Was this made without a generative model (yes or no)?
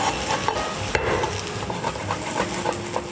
yes